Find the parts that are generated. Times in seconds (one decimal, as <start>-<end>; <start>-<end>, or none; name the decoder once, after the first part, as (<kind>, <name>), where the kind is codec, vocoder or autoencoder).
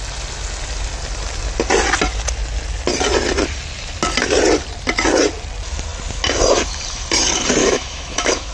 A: 7.6-8.5 (autoencoder, DAC-VAE)